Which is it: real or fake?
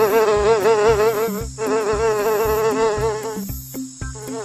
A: real